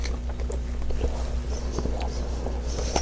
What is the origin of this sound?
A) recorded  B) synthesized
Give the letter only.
A